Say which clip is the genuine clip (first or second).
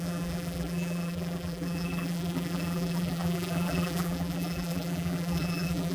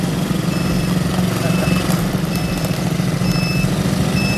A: second